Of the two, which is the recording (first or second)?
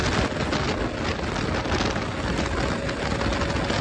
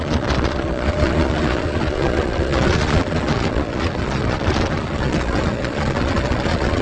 first